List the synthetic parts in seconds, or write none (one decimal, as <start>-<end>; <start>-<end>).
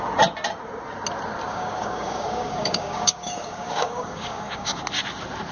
1.5-4.8